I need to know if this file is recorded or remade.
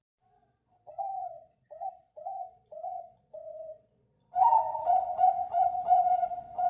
remade